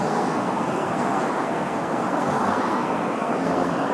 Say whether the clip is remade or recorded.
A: remade